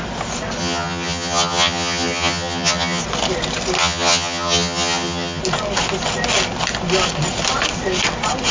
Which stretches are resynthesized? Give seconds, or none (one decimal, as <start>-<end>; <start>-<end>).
0.6-3.0; 3.8-5.4